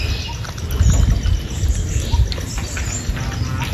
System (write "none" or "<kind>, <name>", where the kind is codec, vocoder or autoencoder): none